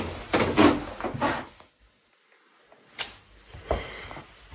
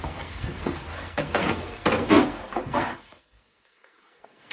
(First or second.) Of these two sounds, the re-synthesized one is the second